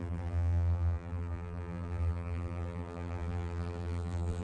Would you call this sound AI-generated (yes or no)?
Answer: yes